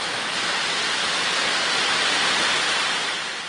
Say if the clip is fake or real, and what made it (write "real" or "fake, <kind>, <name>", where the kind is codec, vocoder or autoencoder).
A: real